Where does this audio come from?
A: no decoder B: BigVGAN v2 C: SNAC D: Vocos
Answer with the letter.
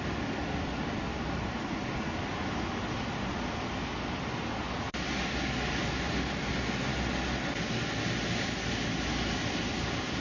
A